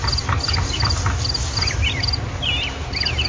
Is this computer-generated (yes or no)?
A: no